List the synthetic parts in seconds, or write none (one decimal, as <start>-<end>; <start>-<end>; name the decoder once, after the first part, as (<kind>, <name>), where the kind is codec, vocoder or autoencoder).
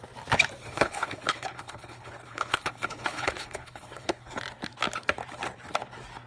0.6-4.4 (codec, HILCodec)